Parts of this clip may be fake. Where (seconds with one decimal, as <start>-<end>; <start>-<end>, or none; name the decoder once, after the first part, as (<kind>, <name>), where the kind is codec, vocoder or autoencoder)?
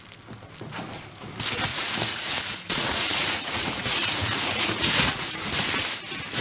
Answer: 1.7-5.5 (vocoder, Vocos)